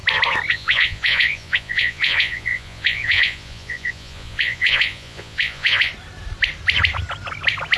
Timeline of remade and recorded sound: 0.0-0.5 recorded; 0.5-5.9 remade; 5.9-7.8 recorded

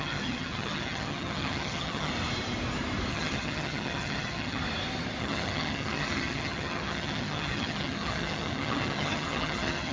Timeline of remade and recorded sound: 0.0-2.1 remade; 2.1-3.1 recorded; 3.1-4.6 remade; 4.6-5.2 recorded; 5.2-9.9 remade

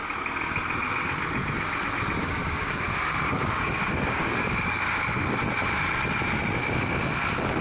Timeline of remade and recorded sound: 0.0-2.2 recorded; 2.2-5.4 remade; 5.4-7.6 recorded

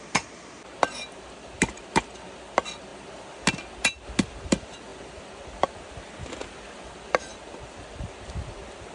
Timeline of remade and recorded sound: 0.0-8.9 recorded

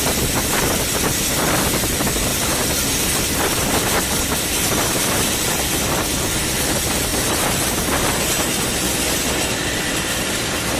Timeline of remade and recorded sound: 0.0-2.3 remade; 2.3-3.0 recorded; 3.0-10.8 remade

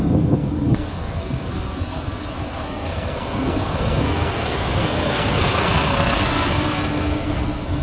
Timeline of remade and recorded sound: 0.0-7.8 remade

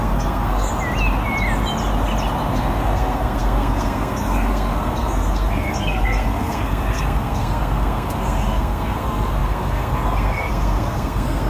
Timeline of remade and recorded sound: 0.0-0.7 remade; 0.7-2.5 recorded; 2.5-11.5 remade

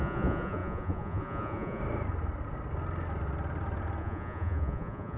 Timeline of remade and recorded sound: 0.0-1.8 remade; 1.8-4.0 recorded; 4.0-5.2 remade